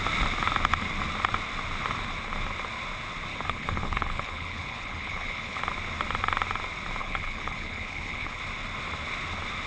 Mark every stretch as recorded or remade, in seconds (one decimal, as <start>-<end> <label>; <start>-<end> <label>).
0.0-3.3 recorded; 3.3-5.6 remade; 5.6-7.0 recorded; 7.0-8.4 remade; 8.4-9.7 recorded